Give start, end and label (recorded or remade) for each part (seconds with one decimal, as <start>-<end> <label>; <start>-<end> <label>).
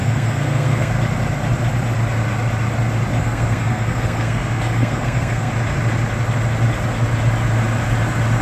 0.0-0.9 remade; 0.9-3.2 recorded; 3.2-5.5 remade; 5.5-8.4 recorded